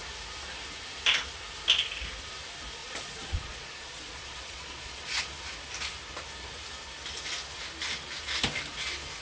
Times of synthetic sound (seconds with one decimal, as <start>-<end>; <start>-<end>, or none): 2.8-5.2